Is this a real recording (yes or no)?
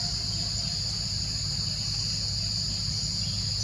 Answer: yes